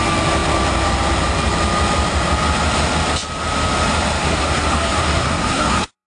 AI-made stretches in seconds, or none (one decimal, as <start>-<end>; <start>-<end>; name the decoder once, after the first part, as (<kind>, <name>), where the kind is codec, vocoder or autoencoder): 4.2-6.1 (codec, SNAC)